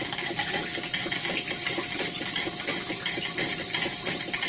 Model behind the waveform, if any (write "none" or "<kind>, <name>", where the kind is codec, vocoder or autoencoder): none